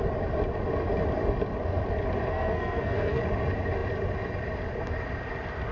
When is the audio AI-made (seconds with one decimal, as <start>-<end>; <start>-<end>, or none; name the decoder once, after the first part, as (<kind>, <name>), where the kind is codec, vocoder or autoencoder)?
2.3-3.2 (codec, SNAC)